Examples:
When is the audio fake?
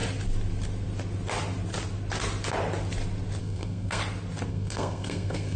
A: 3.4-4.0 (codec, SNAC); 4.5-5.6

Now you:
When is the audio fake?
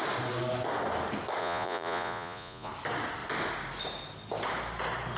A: 1.4-2.7 (vocoder, Vocos)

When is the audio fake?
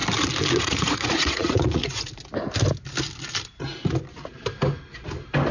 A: 0.6-2.1 (vocoder, Vocos)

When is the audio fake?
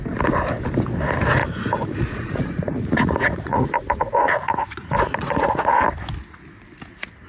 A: 1.4-5.7 (vocoder, Vocos)